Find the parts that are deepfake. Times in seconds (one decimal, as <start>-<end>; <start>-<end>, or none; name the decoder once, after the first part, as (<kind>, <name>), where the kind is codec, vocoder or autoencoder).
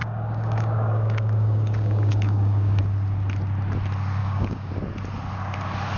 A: 0.0-2.8 (codec, DAC); 4.2-4.7